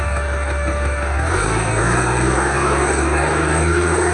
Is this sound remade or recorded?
remade